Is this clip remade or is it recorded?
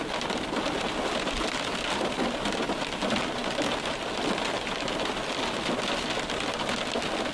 recorded